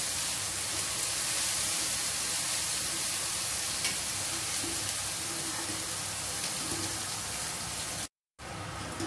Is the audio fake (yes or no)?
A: no